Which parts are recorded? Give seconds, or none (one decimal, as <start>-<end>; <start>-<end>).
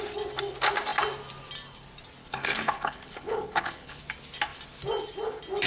0.0-2.2; 4.0-5.7